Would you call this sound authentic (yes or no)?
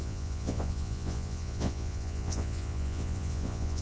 no